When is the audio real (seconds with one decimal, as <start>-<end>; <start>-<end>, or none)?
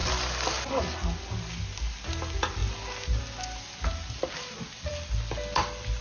0.0-6.0